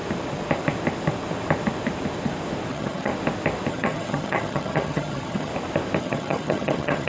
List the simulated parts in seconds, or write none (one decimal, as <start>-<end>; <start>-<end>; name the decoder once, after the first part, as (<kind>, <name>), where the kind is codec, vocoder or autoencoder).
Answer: 2.7-3.1 (vocoder, HiFi-GAN); 3.7-5.5; 6.0-7.1